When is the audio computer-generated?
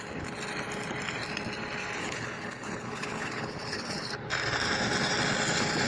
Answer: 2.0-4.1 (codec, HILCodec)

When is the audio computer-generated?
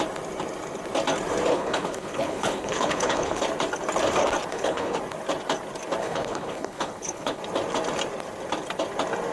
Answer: 1.5-3.4 (codec, HILCodec); 4.5-5.0; 6.0-7.4